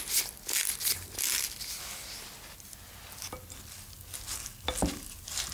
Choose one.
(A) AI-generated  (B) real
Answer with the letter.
B